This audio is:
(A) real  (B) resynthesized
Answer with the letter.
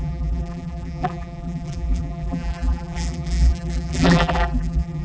B